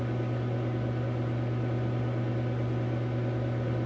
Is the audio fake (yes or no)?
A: no